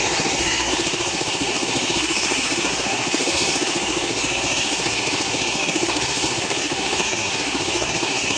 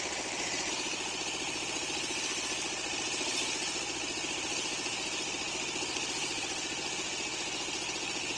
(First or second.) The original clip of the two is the second